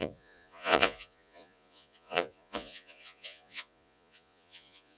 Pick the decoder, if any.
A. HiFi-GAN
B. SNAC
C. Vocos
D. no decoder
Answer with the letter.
C